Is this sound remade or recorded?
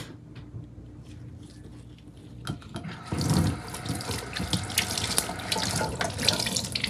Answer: recorded